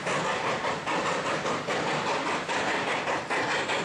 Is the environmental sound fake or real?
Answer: real